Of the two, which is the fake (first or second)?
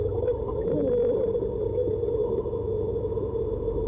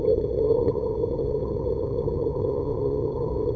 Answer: second